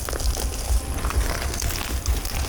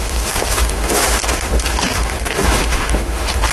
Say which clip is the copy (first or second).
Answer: second